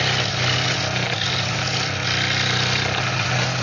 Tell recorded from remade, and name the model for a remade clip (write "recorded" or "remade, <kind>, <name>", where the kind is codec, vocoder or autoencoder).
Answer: recorded